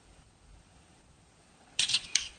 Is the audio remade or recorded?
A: remade